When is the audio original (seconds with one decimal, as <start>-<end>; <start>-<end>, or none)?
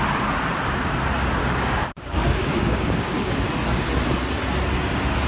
0.0-1.4; 3.3-5.3